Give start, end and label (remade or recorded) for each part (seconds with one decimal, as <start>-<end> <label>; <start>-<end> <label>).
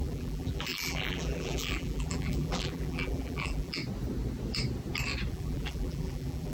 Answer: 0.0-3.8 remade; 3.8-5.3 recorded; 5.3-6.5 remade